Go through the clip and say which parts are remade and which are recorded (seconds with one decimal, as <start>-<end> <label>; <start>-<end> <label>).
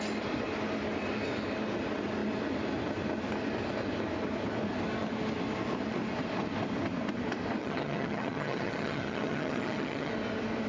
0.0-7.6 recorded; 7.6-10.1 remade; 10.1-10.7 recorded